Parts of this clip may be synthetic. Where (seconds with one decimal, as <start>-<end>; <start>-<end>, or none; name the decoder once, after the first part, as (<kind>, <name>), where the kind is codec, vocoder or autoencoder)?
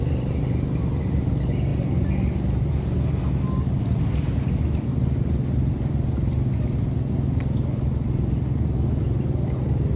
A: none